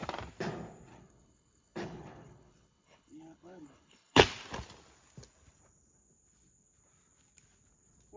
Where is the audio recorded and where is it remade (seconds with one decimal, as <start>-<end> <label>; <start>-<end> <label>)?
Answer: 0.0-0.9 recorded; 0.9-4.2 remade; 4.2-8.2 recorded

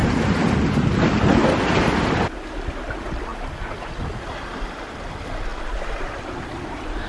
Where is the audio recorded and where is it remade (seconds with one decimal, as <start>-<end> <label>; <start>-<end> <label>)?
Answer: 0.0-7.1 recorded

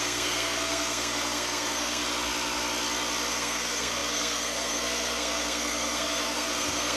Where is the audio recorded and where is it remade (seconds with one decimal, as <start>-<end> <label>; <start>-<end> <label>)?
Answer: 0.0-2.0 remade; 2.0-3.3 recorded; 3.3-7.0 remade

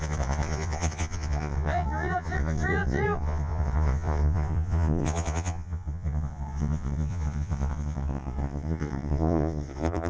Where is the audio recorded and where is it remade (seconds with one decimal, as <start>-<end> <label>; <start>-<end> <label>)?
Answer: 0.0-10.1 remade

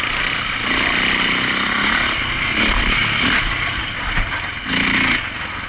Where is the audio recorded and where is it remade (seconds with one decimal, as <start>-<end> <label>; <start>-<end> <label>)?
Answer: 0.0-5.7 recorded